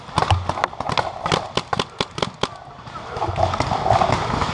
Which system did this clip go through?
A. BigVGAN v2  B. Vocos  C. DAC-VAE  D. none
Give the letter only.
D